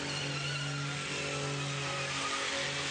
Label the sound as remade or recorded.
recorded